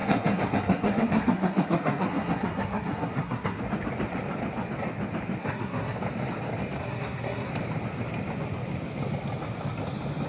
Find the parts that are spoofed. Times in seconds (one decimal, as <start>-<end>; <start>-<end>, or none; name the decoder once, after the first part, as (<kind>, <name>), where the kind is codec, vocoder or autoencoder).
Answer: 0.0-3.6 (codec, SNAC); 5.4-6.0; 6.8-7.5